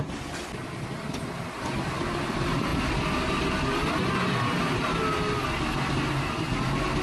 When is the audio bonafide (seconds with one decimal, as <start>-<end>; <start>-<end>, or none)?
0.0-7.0